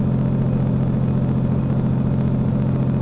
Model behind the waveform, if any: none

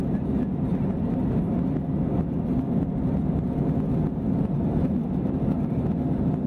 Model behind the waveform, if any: none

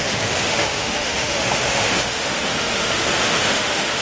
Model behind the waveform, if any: autoencoder, DAC-VAE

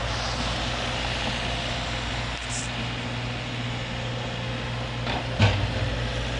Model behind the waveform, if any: none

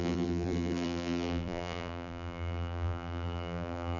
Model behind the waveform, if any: vocoder, BigVGAN v2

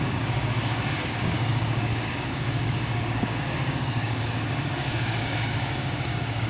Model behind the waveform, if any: codec, DAC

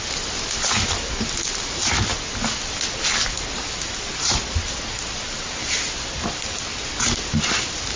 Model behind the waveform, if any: none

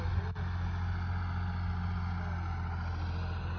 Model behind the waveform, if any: none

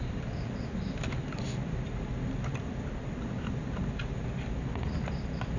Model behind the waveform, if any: none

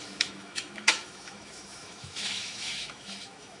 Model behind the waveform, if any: autoencoder, DAC-VAE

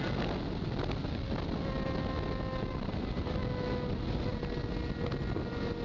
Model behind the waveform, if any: none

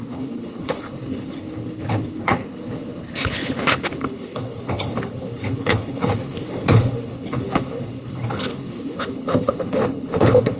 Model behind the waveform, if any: codec, HILCodec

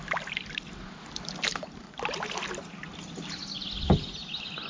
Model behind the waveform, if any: none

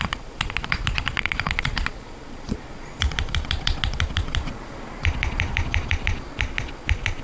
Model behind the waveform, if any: vocoder, Vocos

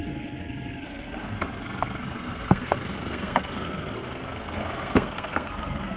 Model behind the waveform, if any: codec, SNAC